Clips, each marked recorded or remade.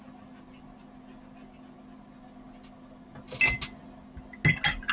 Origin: recorded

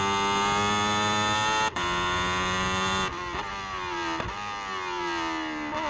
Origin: recorded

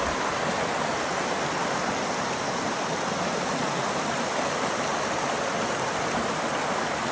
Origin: recorded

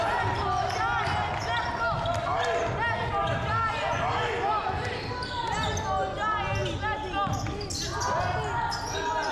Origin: recorded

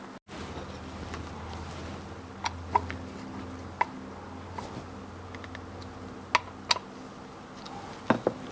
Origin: recorded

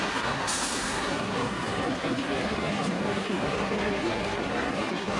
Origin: remade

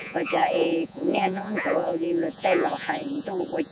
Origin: remade